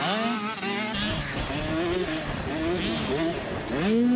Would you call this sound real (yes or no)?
yes